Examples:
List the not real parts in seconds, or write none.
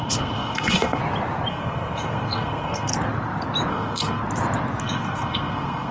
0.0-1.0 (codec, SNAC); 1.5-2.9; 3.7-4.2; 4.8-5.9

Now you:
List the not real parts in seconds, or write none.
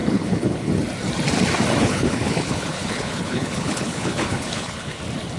0.0-0.7 (codec, HILCodec); 1.8-5.0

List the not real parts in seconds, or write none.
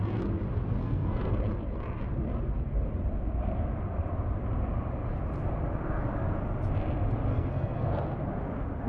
0.8-1.3 (codec, SNAC); 7.3-7.9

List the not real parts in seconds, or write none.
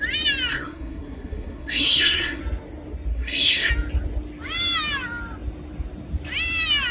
0.5-2.4 (codec, SNAC); 3.1-3.7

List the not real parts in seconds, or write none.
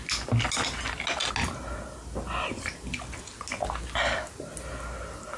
none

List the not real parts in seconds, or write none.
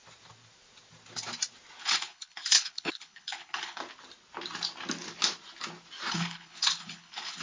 1.8-3.8 (codec, HILCodec); 6.1-7.4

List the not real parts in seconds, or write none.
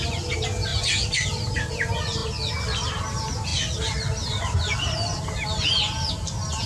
0.7-1.7 (vocoder, BigVGAN v2); 3.5-4.6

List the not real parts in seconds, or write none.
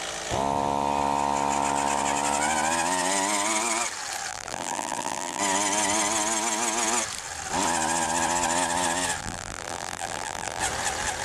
4.3-5.4 (vocoder, BigVGAN v2); 9.2-10.6